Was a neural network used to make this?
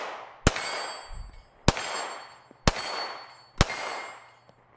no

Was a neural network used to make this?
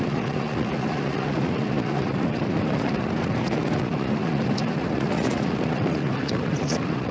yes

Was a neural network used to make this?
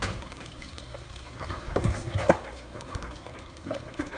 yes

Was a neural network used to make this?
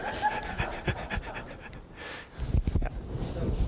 no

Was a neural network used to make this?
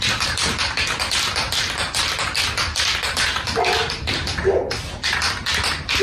no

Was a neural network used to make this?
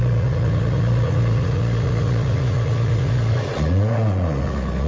yes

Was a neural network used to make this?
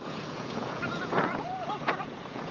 yes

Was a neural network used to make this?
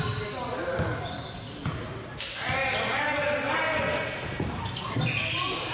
no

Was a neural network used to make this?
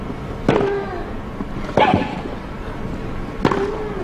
no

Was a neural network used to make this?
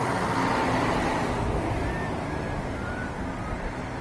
no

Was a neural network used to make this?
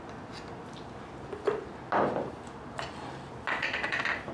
no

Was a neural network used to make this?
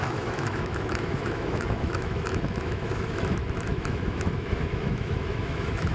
yes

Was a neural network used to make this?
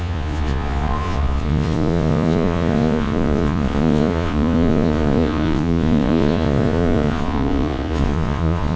yes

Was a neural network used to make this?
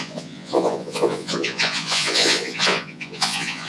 yes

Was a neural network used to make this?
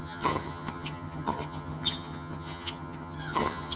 yes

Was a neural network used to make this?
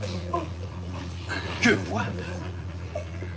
yes